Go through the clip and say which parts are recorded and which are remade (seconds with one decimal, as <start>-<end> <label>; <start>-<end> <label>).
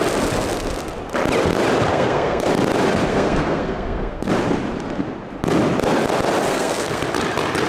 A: 0.0-1.9 recorded; 1.9-2.5 remade; 2.5-3.1 recorded; 3.1-4.3 remade; 4.3-6.5 recorded; 6.5-7.0 remade; 7.0-7.7 recorded